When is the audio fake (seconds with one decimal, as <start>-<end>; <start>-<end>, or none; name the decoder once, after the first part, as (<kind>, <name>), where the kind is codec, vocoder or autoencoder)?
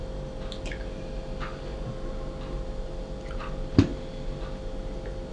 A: none